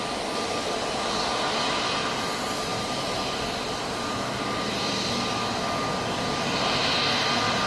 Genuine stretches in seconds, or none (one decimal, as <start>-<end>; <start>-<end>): 0.0-2.7; 4.8-7.7